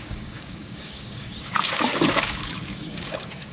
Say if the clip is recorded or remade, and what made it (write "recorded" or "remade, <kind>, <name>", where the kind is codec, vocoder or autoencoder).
remade, codec, DAC